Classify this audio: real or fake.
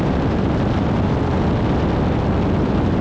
real